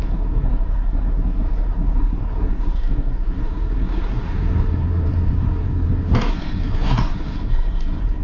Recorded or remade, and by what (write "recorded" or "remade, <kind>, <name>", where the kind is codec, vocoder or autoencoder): remade, codec, SNAC